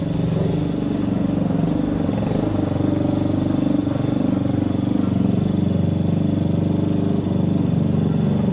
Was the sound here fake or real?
real